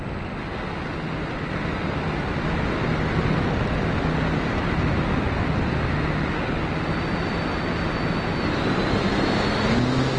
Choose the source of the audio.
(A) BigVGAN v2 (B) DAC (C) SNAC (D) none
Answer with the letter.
D